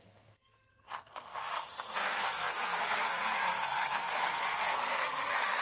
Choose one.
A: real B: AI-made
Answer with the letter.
B